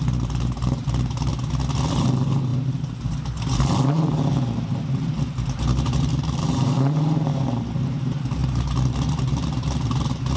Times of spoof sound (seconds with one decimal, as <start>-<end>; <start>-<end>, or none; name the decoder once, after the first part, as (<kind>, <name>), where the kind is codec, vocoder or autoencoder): 0.0-1.3 (vocoder, BigVGAN v2); 1.9-10.4